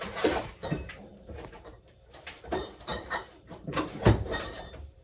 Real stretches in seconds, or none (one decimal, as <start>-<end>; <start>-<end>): none